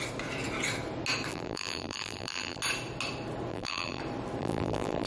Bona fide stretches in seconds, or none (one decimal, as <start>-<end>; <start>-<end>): 0.0-1.3; 2.6-3.5; 4.0-4.4